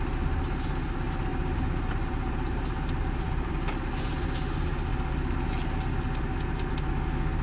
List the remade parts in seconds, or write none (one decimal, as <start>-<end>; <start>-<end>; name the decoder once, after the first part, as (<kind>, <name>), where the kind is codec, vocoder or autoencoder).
1.3-3.5 (vocoder, BigVGAN v2)